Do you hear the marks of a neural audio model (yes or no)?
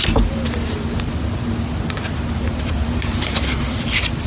no